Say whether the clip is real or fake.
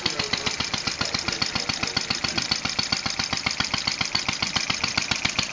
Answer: real